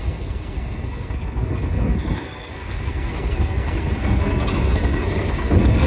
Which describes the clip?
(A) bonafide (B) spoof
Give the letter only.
B